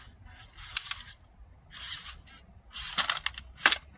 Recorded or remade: recorded